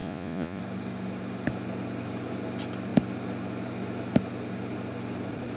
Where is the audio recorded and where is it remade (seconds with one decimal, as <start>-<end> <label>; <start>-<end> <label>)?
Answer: 0.0-0.6 remade; 0.6-5.6 recorded